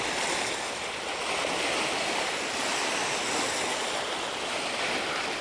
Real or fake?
real